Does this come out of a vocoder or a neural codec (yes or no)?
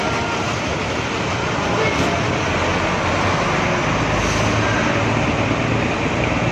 no